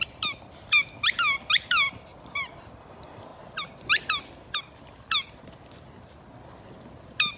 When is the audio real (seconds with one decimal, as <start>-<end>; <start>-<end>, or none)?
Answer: 0.0-7.4